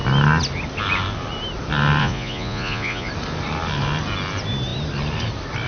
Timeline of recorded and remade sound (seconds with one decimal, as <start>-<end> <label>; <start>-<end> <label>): 0.0-2.0 recorded; 2.0-3.1 remade; 3.1-5.7 recorded